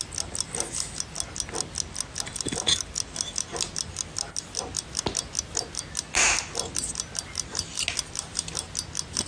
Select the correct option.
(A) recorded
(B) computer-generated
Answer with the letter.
A